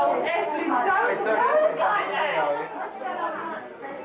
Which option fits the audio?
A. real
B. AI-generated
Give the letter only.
A